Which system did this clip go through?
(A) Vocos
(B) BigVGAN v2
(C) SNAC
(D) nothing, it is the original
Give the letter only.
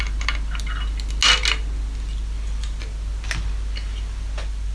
D